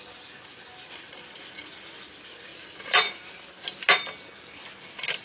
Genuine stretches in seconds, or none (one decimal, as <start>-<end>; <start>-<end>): 0.0-2.5; 3.3-5.2